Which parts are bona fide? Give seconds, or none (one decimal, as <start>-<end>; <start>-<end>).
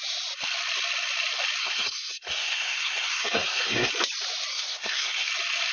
0.0-1.6; 3.9-4.5; 5.3-5.7